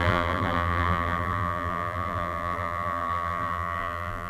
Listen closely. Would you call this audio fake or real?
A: fake